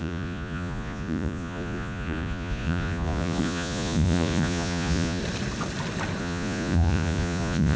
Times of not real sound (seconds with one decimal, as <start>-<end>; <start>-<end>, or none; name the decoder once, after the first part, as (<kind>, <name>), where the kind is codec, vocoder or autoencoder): 0.0-5.2 (vocoder, Vocos); 6.2-7.8